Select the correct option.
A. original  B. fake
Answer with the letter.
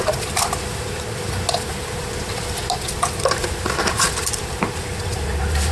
A